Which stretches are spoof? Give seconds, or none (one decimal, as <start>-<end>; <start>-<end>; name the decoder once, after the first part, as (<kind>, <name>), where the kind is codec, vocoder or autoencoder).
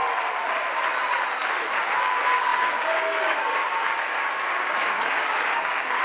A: 2.0-6.0 (codec, DAC)